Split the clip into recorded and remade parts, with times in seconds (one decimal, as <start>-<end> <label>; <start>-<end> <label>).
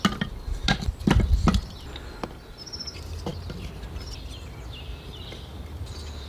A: 0.0-6.3 recorded